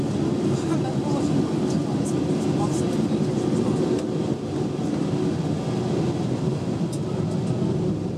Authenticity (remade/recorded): recorded